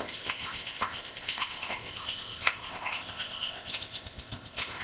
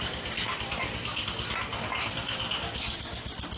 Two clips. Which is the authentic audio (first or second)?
second